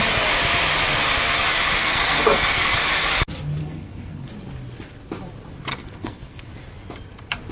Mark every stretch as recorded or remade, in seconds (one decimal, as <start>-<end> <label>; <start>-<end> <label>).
0.0-1.8 recorded; 1.8-2.8 remade; 2.8-3.6 recorded; 3.6-4.3 remade; 4.3-5.7 recorded; 5.7-6.5 remade; 6.5-7.5 recorded